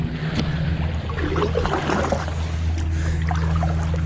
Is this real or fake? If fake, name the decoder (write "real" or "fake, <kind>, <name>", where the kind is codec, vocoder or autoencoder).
real